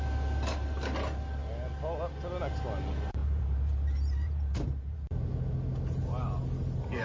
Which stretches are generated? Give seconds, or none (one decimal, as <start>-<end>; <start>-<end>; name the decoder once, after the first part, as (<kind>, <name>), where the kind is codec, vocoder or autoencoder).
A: 3.2-5.3 (vocoder, BigVGAN v2)